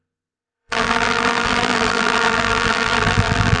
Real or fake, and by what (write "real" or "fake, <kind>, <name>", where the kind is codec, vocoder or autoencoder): fake, vocoder, BigVGAN v2